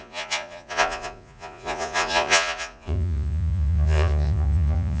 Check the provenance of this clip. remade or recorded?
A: remade